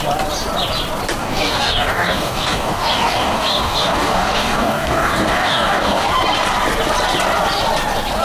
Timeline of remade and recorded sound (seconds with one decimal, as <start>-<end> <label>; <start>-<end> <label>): 0.0-1.2 recorded; 1.2-6.1 remade; 6.1-8.2 recorded